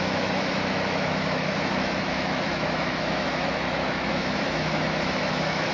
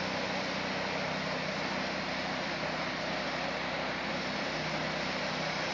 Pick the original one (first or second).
second